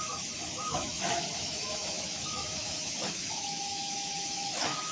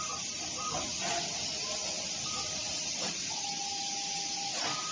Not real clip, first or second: first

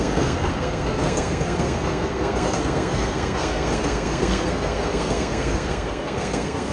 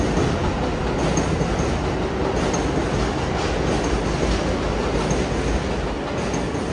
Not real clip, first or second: first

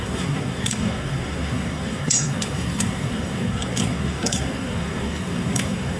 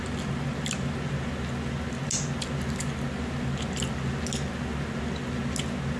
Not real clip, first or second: first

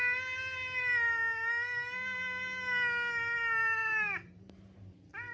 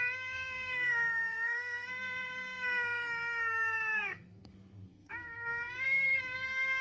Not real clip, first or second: second